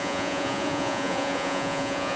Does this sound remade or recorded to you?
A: remade